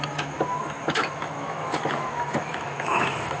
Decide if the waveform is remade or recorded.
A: remade